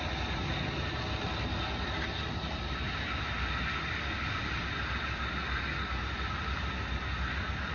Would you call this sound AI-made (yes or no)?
no